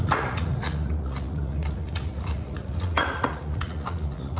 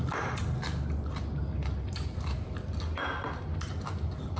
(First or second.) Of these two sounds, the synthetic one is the first